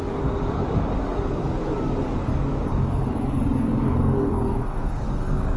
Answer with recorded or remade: remade